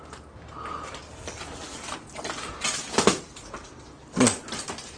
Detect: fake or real real